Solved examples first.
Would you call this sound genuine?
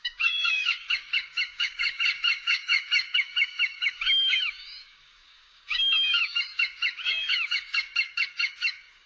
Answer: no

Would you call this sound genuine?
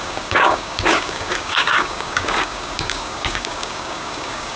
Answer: no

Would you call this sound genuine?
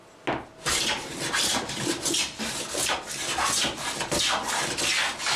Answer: yes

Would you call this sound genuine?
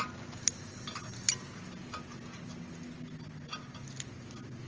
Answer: yes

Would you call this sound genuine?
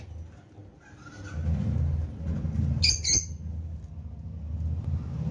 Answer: yes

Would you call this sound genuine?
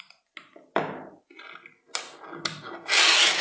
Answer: yes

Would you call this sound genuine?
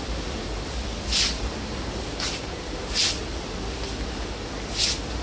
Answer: yes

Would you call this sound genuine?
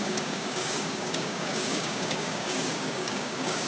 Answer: no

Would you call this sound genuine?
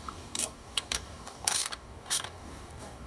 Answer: no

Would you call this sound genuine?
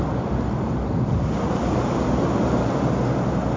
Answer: yes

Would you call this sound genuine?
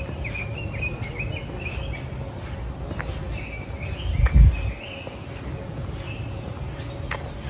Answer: yes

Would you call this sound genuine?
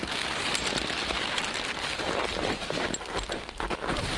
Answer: yes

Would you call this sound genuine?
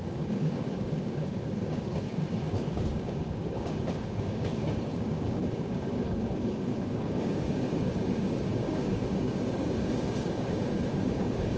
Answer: no